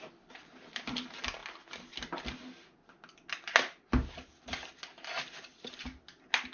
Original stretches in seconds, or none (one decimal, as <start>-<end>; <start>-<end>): 0.0-6.5